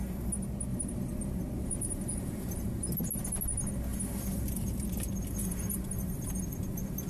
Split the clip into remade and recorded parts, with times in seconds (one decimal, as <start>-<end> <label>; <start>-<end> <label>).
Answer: 0.0-0.7 recorded; 0.7-2.7 remade; 2.7-3.9 recorded; 3.9-6.4 remade; 6.4-7.1 recorded